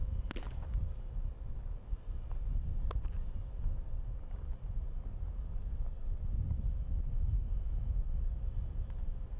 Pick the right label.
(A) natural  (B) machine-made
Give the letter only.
A